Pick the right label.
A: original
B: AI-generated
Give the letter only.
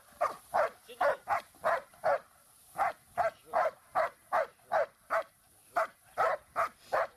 B